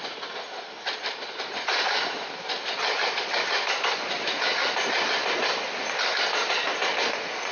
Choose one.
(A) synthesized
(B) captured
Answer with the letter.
B